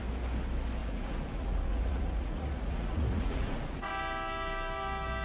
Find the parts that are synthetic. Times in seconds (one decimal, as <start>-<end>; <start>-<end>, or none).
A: 0.8-3.9